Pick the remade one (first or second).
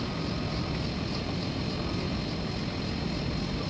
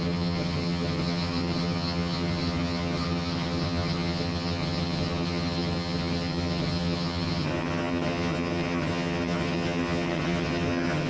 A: second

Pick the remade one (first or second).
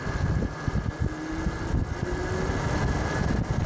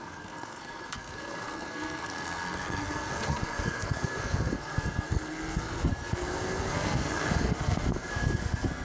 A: second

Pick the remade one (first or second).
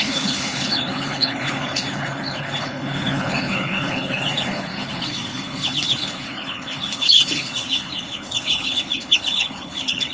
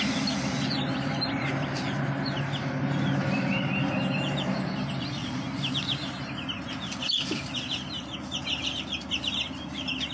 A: first